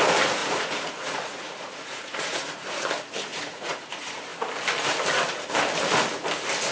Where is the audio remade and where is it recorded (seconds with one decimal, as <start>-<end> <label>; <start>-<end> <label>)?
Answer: 0.0-0.4 recorded; 0.4-2.8 remade; 2.8-3.3 recorded; 3.3-3.9 remade; 3.9-6.7 recorded